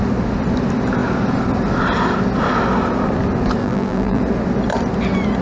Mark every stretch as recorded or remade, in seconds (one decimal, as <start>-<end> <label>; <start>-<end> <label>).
0.0-3.6 recorded; 3.6-4.2 remade; 4.2-5.4 recorded